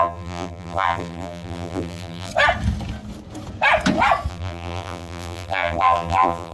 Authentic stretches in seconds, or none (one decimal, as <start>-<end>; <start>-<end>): 2.3-4.3